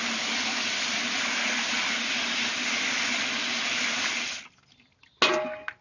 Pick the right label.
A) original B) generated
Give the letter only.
A